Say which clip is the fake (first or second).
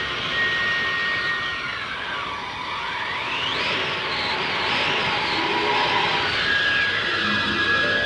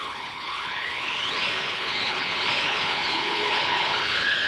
second